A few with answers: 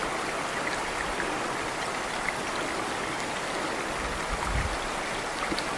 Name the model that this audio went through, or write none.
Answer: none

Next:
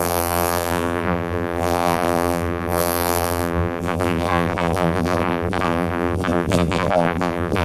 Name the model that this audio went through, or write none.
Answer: vocoder, BigVGAN v2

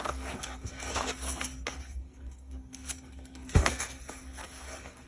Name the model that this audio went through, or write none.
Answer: codec, SNAC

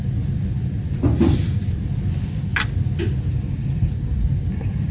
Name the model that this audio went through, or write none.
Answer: none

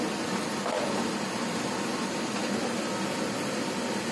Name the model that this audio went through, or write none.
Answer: none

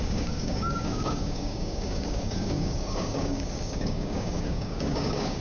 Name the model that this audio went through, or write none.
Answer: codec, DAC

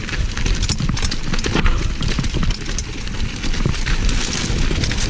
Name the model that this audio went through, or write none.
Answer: none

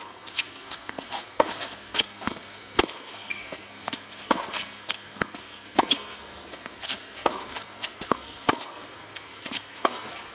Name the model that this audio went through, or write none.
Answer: codec, SNAC